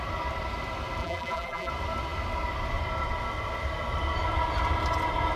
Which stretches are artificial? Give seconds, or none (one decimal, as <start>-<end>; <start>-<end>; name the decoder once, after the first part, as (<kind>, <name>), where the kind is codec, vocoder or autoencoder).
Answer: 1.0-1.7 (vocoder, BigVGAN v2)